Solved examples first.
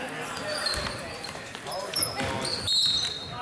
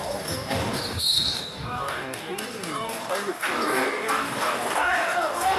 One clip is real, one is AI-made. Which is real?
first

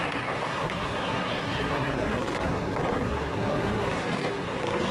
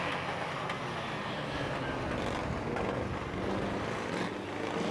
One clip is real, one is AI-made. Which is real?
second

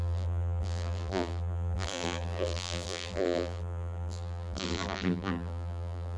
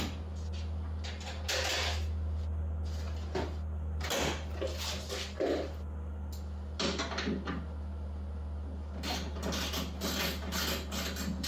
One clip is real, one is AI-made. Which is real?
second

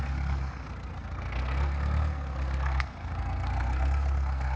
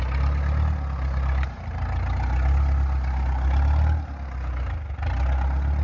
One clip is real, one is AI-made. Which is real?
second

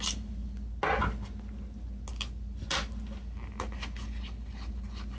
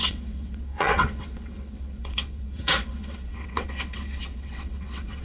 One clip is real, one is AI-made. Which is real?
first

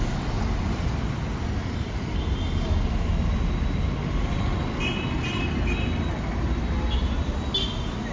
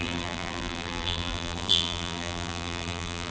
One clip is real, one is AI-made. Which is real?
first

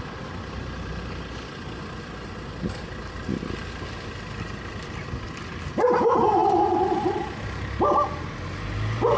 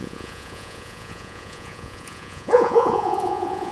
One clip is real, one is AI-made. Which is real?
first